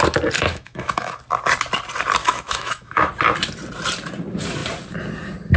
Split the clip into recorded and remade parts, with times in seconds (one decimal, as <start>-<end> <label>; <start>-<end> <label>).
0.0-0.5 recorded; 0.5-1.2 remade; 1.2-2.2 recorded; 2.2-3.1 remade; 3.1-5.6 recorded